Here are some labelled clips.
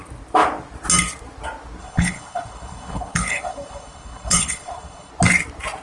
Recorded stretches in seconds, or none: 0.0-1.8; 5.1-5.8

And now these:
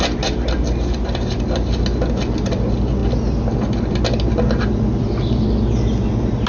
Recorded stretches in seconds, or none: 0.0-6.5

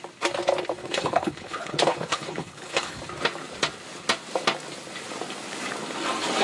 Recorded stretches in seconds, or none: 0.0-0.8; 3.0-6.4